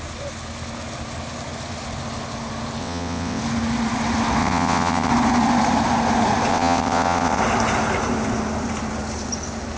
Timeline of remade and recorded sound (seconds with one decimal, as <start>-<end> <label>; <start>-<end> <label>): 0.0-2.8 recorded; 2.8-3.4 remade; 3.4-4.4 recorded; 4.4-5.1 remade; 5.1-6.5 recorded; 6.5-7.4 remade; 7.4-9.8 recorded